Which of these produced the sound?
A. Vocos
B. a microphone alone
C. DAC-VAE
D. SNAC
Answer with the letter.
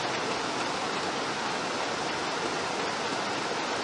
B